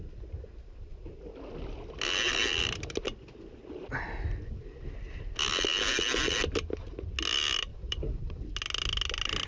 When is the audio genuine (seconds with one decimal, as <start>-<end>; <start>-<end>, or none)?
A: 0.0-7.7; 8.5-9.5